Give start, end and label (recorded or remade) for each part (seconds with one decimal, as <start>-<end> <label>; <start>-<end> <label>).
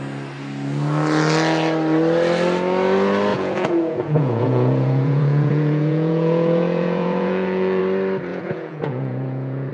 0.0-3.3 recorded; 3.3-7.8 remade; 7.8-8.3 recorded; 8.3-9.7 remade